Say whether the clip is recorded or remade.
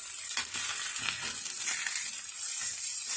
recorded